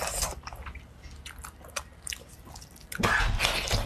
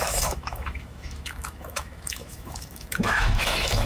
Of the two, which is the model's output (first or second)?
second